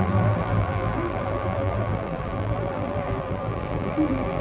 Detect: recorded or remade remade